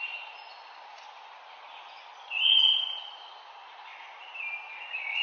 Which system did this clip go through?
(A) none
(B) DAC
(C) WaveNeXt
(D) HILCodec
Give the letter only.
A